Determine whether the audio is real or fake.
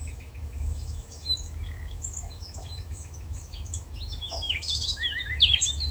fake